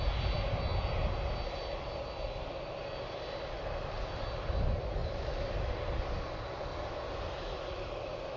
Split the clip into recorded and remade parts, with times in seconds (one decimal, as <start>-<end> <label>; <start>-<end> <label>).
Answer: 0.0-8.4 recorded